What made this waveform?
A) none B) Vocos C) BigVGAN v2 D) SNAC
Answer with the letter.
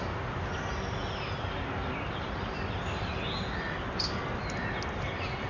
A